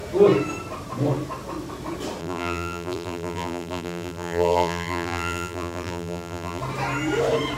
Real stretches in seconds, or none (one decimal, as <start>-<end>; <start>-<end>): 0.0-2.2; 6.6-7.6